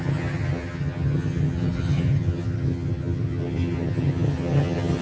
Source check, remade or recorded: remade